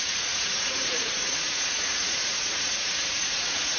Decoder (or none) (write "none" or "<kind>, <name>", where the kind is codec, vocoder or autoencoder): vocoder, Vocos